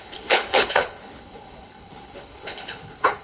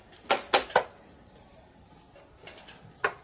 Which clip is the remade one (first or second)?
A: first